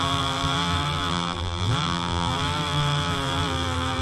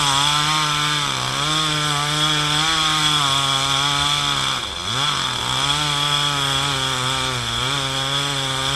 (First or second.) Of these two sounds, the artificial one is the first